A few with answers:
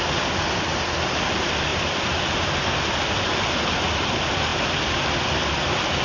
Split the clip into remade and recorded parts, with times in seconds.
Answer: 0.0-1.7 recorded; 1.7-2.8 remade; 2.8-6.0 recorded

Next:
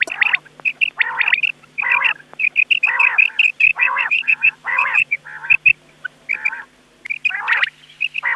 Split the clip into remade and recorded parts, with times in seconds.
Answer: 0.0-3.7 recorded; 3.7-5.2 remade; 5.2-8.4 recorded

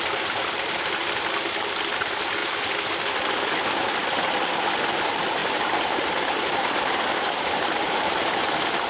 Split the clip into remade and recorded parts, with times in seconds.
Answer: 0.0-5.4 recorded; 5.4-8.4 remade; 8.4-8.9 recorded

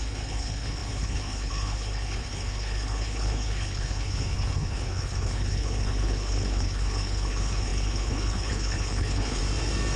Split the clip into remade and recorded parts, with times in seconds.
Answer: 0.0-9.4 remade; 9.4-10.0 recorded

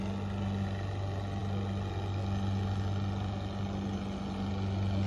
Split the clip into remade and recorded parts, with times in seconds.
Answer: 0.0-5.1 recorded

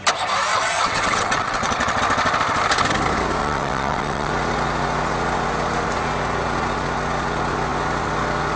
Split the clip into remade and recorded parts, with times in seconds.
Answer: 0.0-0.5 recorded; 0.5-2.0 remade; 2.0-3.4 recorded; 3.4-4.3 remade; 4.3-8.6 recorded

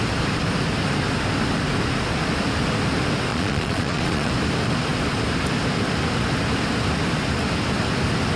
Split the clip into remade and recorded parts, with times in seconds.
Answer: 0.0-3.3 recorded; 3.3-4.3 remade; 4.3-8.4 recorded